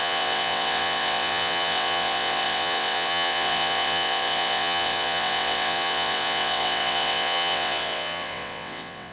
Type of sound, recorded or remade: remade